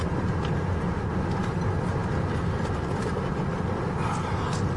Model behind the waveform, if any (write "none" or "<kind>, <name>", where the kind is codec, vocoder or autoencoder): none